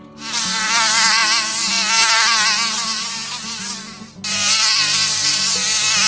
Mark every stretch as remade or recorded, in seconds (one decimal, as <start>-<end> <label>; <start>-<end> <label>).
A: 0.0-6.1 recorded